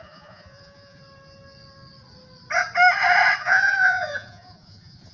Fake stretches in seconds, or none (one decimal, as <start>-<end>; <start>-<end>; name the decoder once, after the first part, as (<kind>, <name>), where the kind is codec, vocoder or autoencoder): 0.0-1.0 (vocoder, Vocos); 3.4-5.1